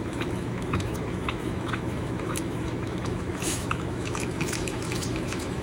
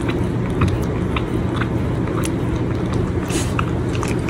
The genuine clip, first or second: second